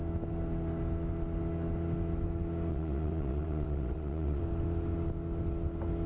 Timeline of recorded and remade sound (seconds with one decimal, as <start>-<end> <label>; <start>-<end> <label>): 0.0-2.7 recorded; 2.7-4.4 remade; 4.4-6.1 recorded